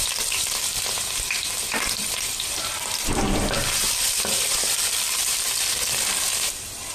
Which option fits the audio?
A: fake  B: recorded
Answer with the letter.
A